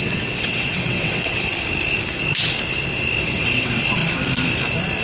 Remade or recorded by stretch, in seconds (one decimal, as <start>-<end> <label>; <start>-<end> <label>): 0.0-1.5 remade; 1.5-3.2 recorded; 3.2-4.0 remade; 4.0-5.0 recorded